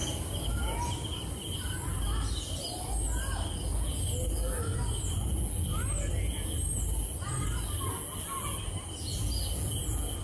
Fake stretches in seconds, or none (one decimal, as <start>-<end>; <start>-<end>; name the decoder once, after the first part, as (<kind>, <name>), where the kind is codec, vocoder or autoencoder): none